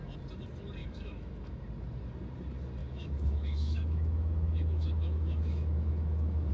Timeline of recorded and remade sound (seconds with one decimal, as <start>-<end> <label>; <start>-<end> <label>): 0.0-0.8 recorded; 0.8-1.6 remade; 1.6-2.8 recorded; 2.8-6.5 remade